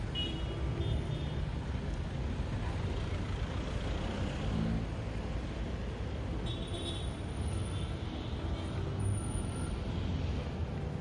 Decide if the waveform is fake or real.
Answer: real